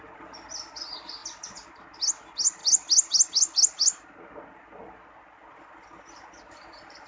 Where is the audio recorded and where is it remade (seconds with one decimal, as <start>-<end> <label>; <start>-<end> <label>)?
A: 0.0-7.1 recorded